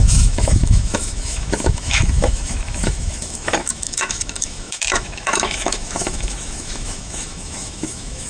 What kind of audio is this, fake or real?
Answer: fake